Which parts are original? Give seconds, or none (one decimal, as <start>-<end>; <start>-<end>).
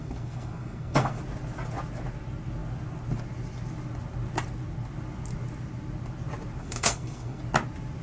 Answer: 1.2-6.6; 7.4-8.0